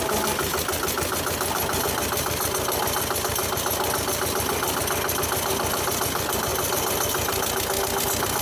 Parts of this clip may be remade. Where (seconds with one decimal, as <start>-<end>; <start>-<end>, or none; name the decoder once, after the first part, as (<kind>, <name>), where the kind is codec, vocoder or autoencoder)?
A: none